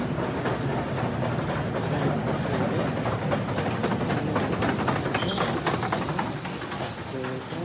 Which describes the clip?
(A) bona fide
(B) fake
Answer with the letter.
A